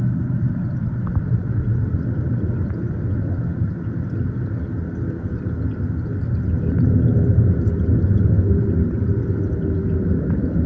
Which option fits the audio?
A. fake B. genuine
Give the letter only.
B